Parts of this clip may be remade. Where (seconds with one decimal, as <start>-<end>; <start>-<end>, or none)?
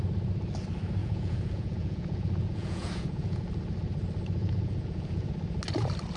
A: 1.0-3.4; 4.4-5.3